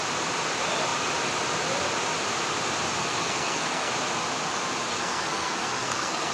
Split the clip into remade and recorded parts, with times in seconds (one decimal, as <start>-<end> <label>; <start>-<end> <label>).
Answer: 0.0-3.0 recorded; 3.0-3.9 remade; 3.9-4.9 recorded; 4.9-6.3 remade